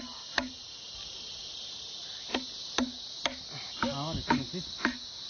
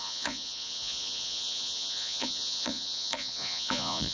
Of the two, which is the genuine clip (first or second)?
first